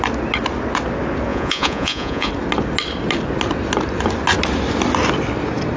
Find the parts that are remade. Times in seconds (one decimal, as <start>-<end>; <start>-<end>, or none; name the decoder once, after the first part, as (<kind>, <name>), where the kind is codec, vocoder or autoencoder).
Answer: 1.3-2.3 (vocoder, Vocos)